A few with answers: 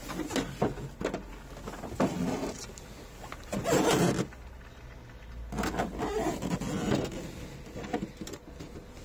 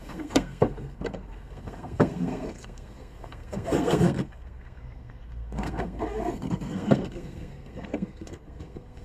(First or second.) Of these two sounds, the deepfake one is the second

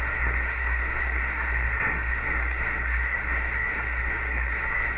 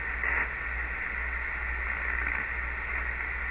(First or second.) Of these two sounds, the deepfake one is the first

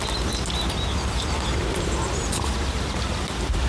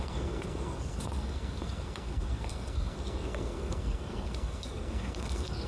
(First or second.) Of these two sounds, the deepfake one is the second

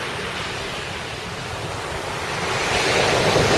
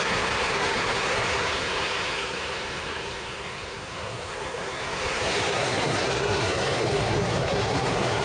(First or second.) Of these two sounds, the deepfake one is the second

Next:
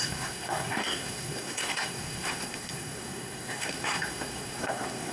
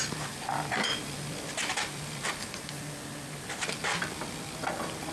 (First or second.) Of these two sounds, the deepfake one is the first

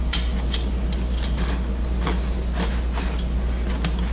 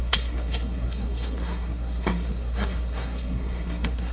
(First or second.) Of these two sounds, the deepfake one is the second